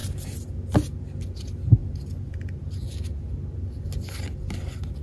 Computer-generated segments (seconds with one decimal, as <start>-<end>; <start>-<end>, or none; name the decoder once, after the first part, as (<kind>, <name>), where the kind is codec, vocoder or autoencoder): 0.0-0.5 (vocoder, BigVGAN v2); 1.8-2.5